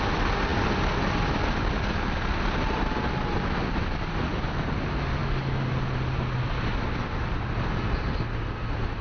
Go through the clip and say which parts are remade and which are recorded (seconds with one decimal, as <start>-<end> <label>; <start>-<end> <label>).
0.0-9.0 recorded